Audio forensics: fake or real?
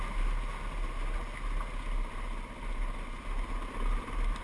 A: real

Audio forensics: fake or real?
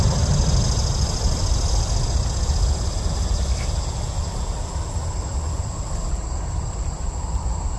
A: real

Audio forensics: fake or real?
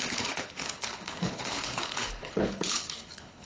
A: fake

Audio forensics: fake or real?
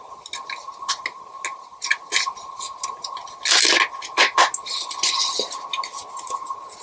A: real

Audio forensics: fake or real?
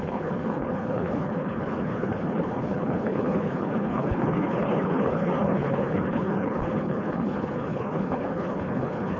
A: fake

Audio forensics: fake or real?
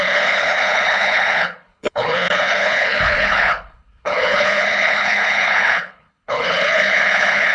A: fake